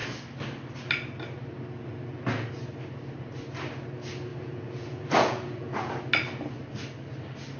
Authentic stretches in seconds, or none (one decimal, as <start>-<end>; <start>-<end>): 0.0-4.3; 5.9-7.6